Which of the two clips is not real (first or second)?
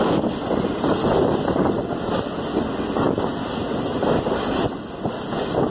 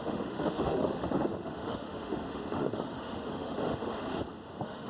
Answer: second